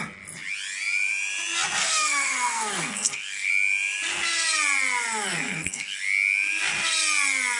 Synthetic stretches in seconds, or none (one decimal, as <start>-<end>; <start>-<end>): 1.8-3.5; 5.3-6.0